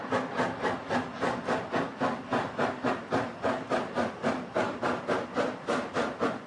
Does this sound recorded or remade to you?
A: recorded